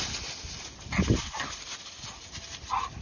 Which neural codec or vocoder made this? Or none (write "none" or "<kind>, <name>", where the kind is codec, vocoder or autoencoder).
none